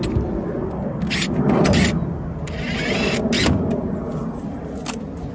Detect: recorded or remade recorded